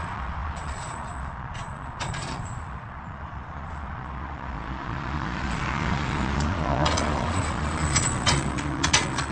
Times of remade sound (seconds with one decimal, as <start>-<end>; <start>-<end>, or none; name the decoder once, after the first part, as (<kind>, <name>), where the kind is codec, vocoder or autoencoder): 0.0-9.3 (vocoder, Vocos)

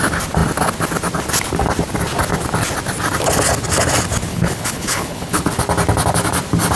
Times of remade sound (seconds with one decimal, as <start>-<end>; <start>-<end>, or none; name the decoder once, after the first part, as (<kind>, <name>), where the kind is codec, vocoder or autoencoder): 4.3-5.4 (codec, HILCodec)

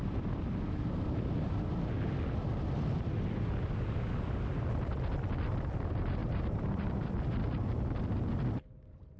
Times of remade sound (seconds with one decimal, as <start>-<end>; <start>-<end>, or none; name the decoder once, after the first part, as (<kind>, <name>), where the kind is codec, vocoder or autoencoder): 6.2-7.1 (vocoder, BigVGAN v2)

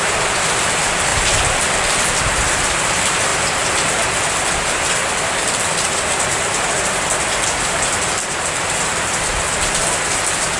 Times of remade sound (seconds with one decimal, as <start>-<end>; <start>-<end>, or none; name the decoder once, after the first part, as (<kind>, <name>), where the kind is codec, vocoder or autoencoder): 0.0-3.3 (vocoder, BigVGAN v2); 4.7-10.6

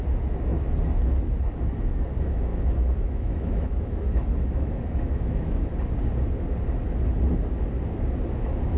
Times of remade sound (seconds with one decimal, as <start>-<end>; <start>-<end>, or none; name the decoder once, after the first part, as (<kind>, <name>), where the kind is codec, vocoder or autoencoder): 2.5-5.7 (autoencoder, DAC-VAE)

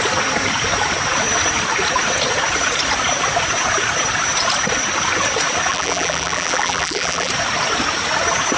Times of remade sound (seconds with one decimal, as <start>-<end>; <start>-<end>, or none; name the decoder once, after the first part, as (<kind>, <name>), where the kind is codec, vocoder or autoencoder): 5.7-7.3 (vocoder, BigVGAN v2)